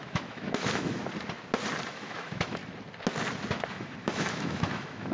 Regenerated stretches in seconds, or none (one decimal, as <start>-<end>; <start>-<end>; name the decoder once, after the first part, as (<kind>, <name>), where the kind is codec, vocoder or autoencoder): 0.0-1.0 (autoencoder, DAC-VAE); 1.9-2.6; 3.7-5.1